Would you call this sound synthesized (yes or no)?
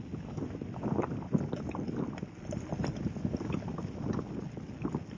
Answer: no